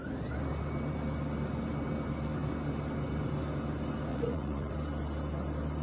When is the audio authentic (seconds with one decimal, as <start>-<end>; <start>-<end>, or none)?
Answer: 0.0-4.1; 4.7-5.8

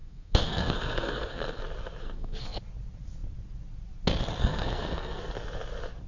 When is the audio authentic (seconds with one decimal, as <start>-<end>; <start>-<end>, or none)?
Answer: 1.6-2.0; 2.6-4.4; 5.2-6.1

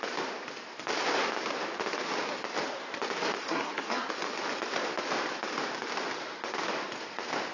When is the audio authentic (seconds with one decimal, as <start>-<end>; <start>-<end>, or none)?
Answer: 0.0-3.4; 4.1-7.5

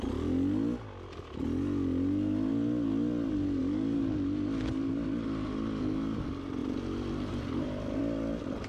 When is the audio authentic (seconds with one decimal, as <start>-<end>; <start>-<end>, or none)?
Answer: 0.0-8.7

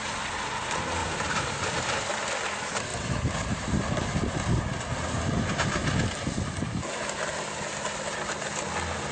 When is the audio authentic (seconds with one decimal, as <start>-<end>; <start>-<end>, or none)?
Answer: 0.0-1.0; 1.8-2.9; 4.0-9.1